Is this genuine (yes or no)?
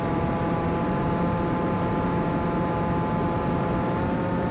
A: no